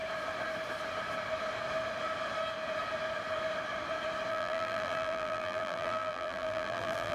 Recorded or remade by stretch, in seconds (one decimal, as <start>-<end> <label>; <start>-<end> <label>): 0.0-4.3 recorded; 4.3-7.1 remade